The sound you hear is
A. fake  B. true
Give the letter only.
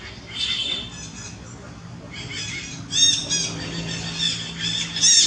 B